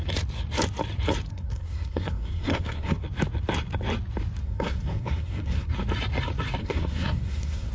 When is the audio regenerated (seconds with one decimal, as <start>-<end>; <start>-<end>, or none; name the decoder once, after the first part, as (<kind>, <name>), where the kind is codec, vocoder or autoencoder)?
1.3-3.0 (codec, SNAC); 4.4-5.7; 6.6-7.7